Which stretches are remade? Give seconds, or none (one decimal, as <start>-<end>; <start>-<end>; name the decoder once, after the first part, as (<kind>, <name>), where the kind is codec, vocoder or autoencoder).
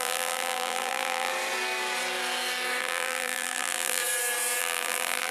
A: 0.0-1.3 (vocoder, BigVGAN v2); 2.8-4.0; 4.6-5.3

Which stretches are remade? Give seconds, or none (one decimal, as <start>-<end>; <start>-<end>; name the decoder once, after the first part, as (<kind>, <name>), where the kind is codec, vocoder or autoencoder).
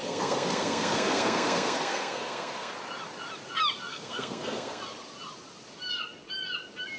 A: 0.0-2.7 (codec, SNAC); 3.9-4.8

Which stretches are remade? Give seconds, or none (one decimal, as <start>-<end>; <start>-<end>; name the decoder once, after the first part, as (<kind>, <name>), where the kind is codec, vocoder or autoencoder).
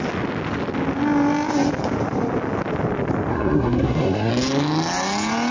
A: 3.3-4.3 (codec, SNAC)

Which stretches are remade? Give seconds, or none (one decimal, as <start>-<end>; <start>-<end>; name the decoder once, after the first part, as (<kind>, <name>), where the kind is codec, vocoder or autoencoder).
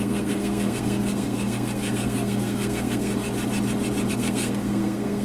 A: 0.0-3.1 (codec, SNAC); 4.1-5.2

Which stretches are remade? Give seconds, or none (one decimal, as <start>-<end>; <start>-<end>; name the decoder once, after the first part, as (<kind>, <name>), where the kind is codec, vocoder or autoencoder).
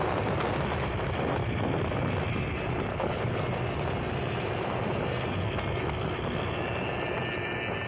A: 2.9-3.4 (codec, HILCodec)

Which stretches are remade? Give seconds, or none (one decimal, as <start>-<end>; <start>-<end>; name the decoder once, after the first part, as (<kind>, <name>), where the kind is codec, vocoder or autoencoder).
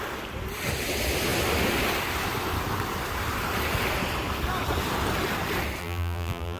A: 5.8-6.6 (vocoder, BigVGAN v2)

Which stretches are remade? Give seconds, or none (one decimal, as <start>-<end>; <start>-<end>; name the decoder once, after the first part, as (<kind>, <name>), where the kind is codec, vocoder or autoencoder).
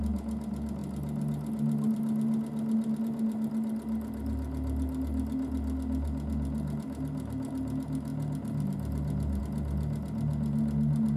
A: none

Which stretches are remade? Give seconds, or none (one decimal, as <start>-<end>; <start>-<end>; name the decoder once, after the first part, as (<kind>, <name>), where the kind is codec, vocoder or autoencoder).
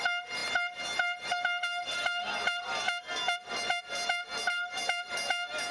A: none